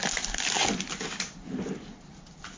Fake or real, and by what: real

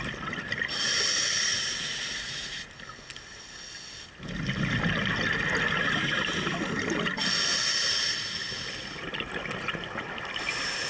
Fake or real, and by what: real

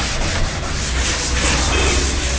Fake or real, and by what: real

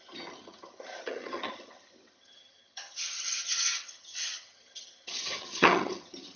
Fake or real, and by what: fake, vocoder, HiFi-GAN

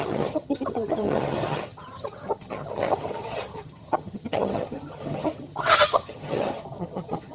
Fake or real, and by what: fake, vocoder, HiFi-GAN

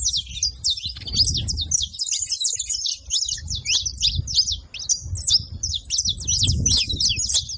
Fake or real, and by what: real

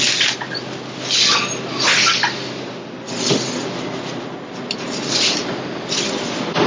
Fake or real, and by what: real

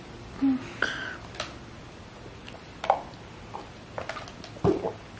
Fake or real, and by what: real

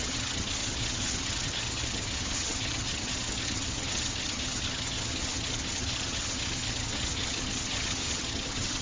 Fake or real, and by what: fake, vocoder, HiFi-GAN